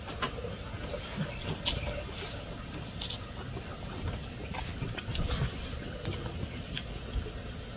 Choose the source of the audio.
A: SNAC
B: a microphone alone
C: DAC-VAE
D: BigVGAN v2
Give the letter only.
B